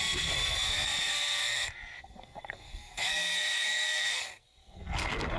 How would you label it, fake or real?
fake